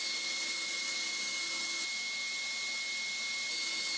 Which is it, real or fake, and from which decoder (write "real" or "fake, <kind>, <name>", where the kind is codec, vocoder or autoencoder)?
real